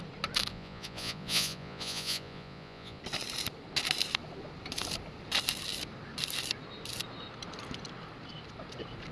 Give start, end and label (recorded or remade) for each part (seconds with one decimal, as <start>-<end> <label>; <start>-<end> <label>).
0.0-0.5 recorded; 0.5-3.0 remade; 3.0-9.1 recorded